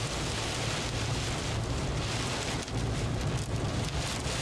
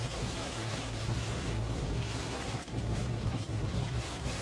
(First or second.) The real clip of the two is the first